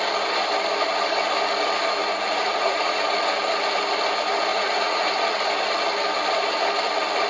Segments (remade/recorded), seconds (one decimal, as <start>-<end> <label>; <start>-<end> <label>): 0.0-2.0 recorded; 2.0-3.0 remade; 3.0-4.5 recorded; 4.5-5.5 remade; 5.5-7.3 recorded